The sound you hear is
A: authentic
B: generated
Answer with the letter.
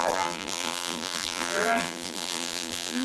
B